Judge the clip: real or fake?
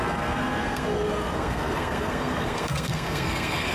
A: fake